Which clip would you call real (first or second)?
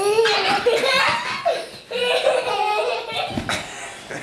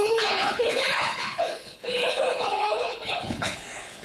first